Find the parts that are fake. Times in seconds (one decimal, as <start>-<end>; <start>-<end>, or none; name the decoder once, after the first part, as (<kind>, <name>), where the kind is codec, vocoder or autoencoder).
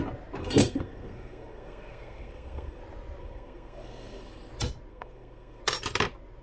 0.4-2.8 (codec, SNAC); 3.2-4.5; 4.9-5.6